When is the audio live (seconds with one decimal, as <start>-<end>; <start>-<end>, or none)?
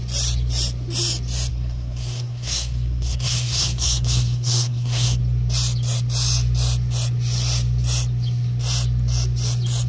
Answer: 0.0-1.5; 5.2-9.9